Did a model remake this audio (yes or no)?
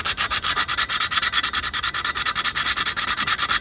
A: no